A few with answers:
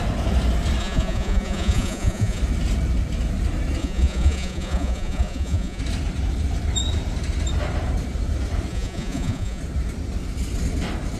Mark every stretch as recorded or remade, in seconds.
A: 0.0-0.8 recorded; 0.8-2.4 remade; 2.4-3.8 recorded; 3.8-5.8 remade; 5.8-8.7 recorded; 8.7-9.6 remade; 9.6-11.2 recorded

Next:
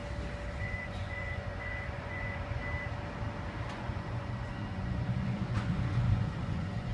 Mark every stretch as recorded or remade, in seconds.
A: 0.0-0.5 recorded; 0.5-2.6 remade; 2.6-3.7 recorded; 3.7-6.9 remade

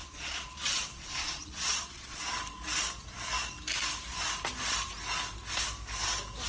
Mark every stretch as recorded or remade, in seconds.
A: 0.0-2.3 remade; 2.3-6.5 recorded

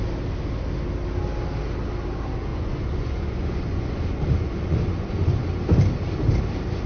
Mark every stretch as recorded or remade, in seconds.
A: 0.0-2.5 recorded; 2.5-4.8 remade; 4.8-6.9 recorded

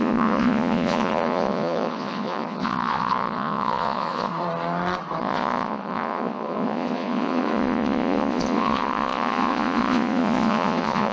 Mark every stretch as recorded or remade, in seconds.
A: 0.0-4.3 remade; 4.3-5.2 recorded; 5.2-11.1 remade

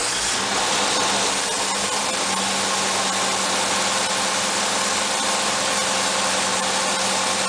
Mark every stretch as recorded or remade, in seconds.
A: 0.0-7.5 recorded

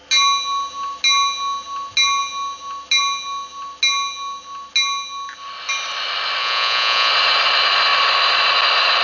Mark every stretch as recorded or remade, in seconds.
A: 0.0-6.4 recorded; 6.4-7.1 remade; 7.1-9.0 recorded